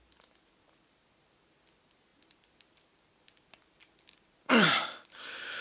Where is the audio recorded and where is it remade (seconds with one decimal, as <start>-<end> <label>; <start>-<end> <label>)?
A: 0.0-5.6 recorded